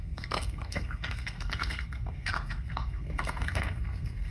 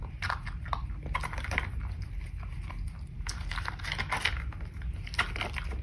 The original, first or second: second